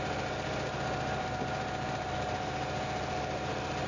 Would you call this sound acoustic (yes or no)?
no